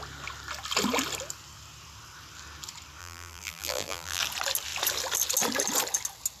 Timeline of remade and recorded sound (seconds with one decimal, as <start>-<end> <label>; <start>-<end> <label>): 0.0-3.0 recorded; 3.0-4.2 remade; 4.2-6.4 recorded